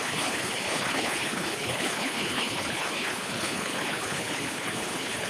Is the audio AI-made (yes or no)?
yes